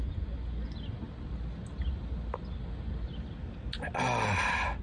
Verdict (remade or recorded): recorded